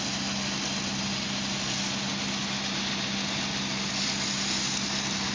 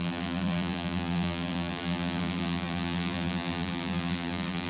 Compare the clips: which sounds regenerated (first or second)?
second